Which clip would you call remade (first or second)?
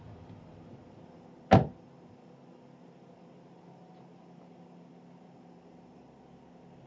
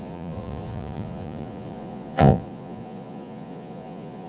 second